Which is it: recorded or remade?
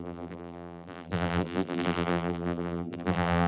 remade